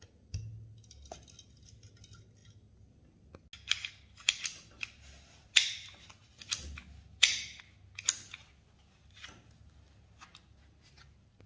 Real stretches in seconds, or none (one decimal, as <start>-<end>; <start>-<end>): 0.0-11.5